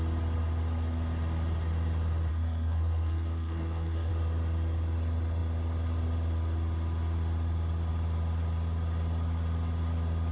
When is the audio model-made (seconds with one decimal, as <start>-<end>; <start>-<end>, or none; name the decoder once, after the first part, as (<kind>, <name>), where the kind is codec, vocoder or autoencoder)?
2.3-4.1 (codec, SNAC)